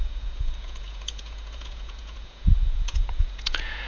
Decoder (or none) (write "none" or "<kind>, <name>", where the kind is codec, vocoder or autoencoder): vocoder, Vocos